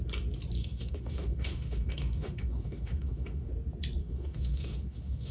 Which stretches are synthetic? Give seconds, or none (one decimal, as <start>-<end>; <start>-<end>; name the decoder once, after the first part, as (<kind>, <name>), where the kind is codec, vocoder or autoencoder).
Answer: 0.6-3.5 (autoencoder, DAC-VAE); 4.0-5.3